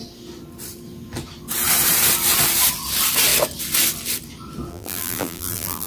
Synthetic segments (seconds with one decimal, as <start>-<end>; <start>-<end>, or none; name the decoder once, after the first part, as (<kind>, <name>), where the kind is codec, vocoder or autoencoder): 4.7-5.9 (vocoder, BigVGAN v2)